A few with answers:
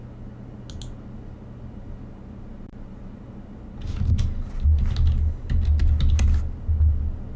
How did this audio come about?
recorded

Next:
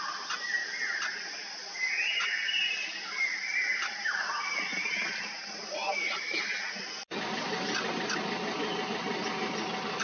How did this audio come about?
recorded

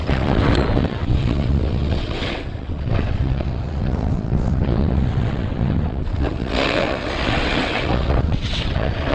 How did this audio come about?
remade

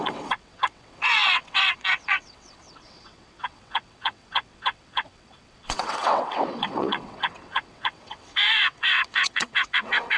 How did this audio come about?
remade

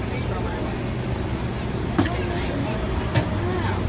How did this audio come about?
recorded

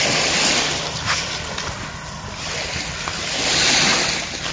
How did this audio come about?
recorded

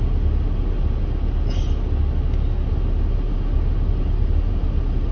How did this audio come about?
recorded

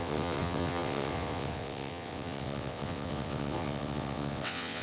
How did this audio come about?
remade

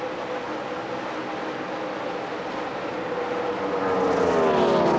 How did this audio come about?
recorded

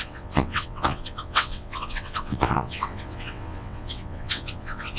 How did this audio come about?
remade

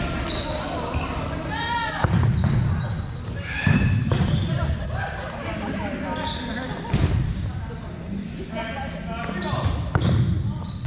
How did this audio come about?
recorded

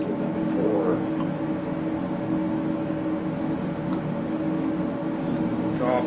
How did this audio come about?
recorded